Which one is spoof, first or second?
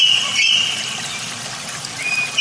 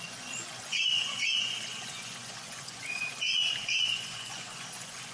second